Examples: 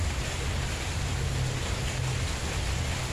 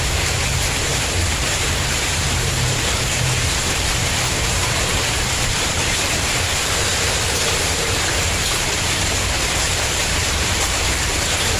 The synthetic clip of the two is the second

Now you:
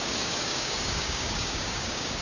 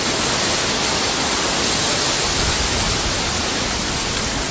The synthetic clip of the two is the first